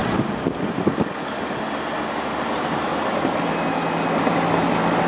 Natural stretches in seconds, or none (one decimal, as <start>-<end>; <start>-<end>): 0.0-5.1